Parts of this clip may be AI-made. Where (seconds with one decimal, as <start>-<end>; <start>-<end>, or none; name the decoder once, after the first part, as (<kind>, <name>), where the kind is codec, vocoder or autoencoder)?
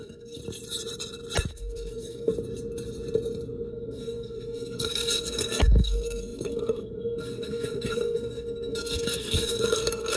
0.0-0.4 (codec, SNAC); 1.5-2.3; 3.7-10.2